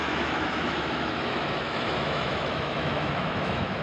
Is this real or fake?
fake